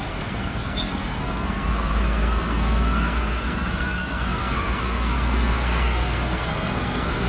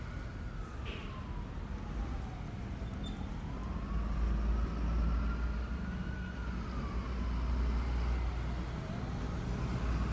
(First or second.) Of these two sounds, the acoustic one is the second